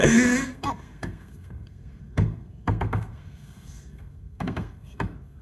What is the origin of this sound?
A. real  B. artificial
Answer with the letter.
B